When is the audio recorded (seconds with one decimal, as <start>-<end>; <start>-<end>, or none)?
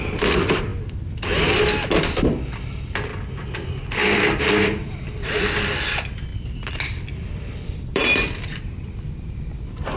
0.7-2.2; 3.1-4.4